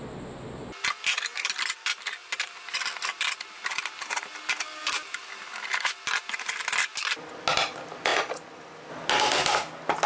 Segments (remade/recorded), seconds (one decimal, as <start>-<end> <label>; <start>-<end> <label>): 0.0-10.1 recorded